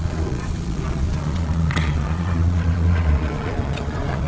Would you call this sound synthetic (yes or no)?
yes